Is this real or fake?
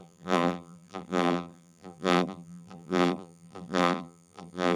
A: fake